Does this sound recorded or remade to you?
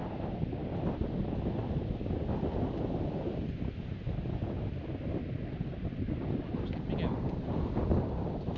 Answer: recorded